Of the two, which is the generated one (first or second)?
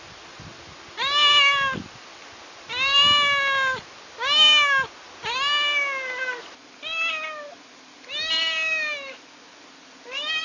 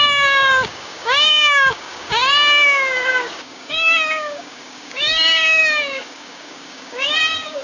second